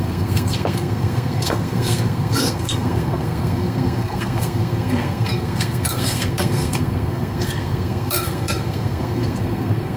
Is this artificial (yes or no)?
yes